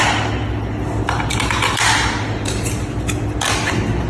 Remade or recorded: recorded